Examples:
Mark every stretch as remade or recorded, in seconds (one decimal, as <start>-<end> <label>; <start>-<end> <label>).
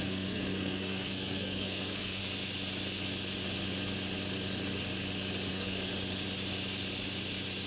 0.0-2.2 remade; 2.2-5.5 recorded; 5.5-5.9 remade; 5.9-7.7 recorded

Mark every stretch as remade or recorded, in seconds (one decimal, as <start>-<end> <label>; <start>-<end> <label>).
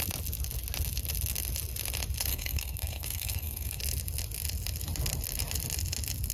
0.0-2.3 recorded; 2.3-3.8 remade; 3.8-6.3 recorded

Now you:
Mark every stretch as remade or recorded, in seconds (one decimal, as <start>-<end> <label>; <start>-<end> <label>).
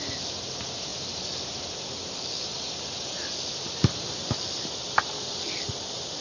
0.0-6.2 recorded